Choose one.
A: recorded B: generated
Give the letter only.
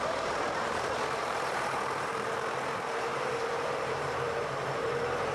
B